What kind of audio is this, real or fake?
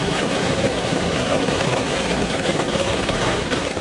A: fake